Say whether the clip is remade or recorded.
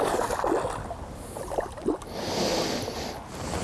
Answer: recorded